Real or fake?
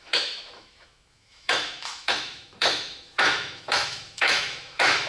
fake